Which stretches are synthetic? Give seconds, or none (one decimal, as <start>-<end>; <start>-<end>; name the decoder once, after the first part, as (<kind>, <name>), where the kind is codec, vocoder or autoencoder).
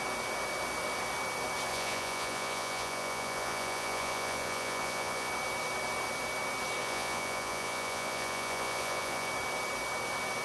1.7-5.3 (vocoder, Vocos); 6.8-9.3